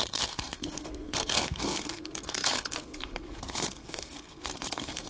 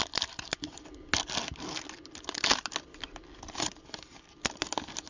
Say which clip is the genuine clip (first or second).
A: second